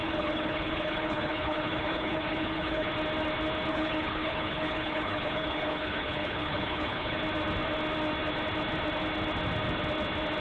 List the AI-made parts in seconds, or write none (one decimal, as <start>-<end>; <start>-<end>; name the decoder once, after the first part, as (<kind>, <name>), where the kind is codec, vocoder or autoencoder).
0.0-2.9 (codec, HILCodec); 3.7-7.2